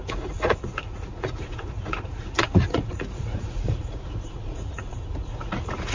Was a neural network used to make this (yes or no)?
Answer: yes